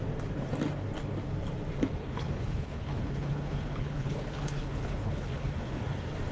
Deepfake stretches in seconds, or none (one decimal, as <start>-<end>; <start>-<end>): 2.0-5.8